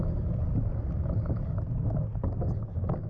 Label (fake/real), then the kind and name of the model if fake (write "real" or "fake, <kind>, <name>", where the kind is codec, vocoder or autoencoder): real